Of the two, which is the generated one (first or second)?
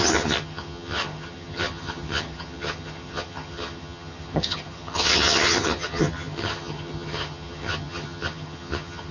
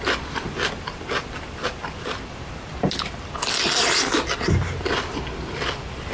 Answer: first